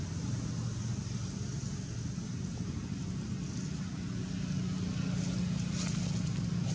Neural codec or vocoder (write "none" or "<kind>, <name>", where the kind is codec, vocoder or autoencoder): none